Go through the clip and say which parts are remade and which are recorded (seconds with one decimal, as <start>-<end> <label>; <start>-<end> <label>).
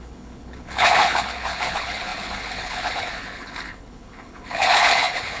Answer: 0.0-5.4 remade